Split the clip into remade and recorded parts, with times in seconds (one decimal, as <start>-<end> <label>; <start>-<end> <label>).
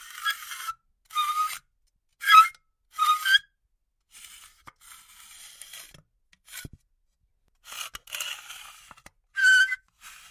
0.0-9.4 recorded; 9.4-9.9 remade; 9.9-10.3 recorded